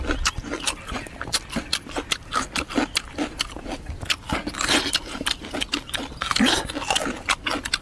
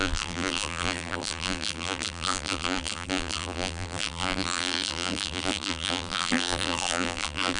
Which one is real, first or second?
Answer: first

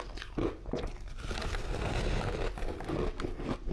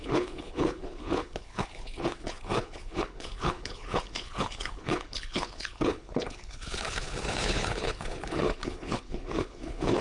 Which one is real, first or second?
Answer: first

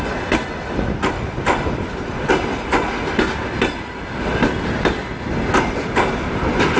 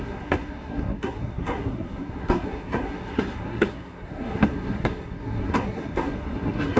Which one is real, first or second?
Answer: first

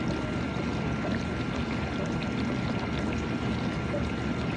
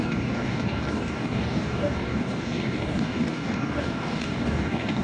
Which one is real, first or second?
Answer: first